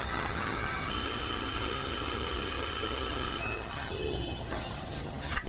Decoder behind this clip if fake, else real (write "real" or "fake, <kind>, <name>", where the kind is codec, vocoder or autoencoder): fake, vocoder, HiFi-GAN